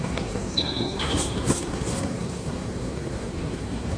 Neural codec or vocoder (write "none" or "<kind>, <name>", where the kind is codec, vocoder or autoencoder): codec, SNAC